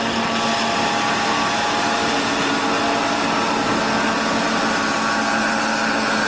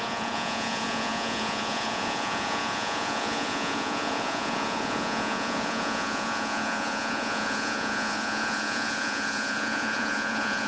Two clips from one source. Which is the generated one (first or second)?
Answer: second